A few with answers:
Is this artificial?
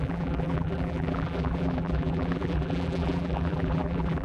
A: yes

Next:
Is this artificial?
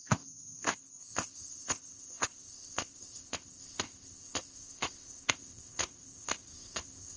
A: yes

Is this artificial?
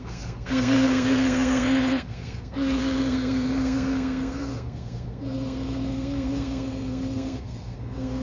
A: yes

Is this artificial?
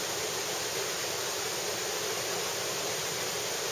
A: no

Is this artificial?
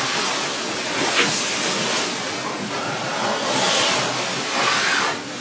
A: no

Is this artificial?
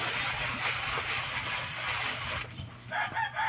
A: no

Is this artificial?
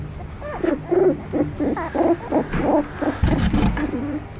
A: no